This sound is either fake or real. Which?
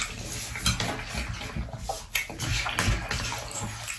real